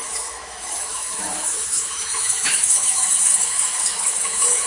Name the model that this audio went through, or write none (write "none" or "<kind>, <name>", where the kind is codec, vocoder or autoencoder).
autoencoder, DAC-VAE